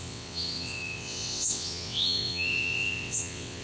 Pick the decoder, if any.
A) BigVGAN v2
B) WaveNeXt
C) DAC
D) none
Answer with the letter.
B